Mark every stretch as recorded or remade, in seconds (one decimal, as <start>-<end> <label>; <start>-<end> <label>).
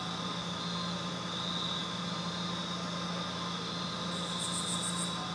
0.0-5.3 recorded